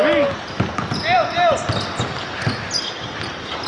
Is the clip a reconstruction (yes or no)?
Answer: no